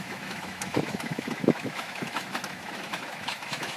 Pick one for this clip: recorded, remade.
remade